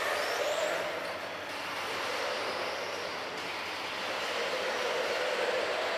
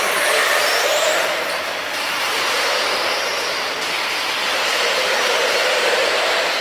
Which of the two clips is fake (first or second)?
second